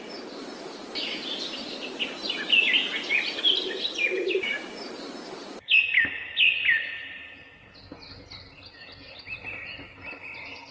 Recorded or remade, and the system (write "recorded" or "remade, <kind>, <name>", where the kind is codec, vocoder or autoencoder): recorded